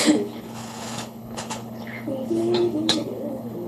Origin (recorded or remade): remade